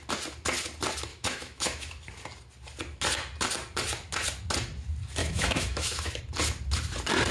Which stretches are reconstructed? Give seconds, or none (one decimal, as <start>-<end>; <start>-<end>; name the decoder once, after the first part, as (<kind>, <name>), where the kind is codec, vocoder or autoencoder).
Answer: 1.1-1.9 (autoencoder, DAC-VAE); 5.2-6.2